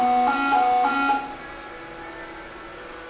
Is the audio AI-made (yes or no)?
no